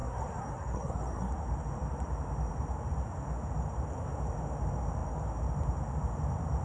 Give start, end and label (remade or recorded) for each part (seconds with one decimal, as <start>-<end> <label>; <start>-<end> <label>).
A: 0.0-1.3 remade; 1.3-6.6 recorded